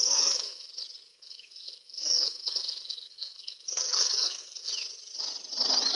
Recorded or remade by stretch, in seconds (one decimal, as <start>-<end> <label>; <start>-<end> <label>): 0.0-0.7 remade; 0.7-1.1 recorded; 1.1-4.7 remade; 4.7-6.0 recorded